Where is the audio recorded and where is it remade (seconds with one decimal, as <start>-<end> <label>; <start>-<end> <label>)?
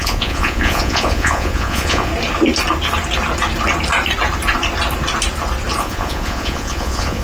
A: 0.0-2.1 remade; 2.1-5.8 recorded; 5.8-7.2 remade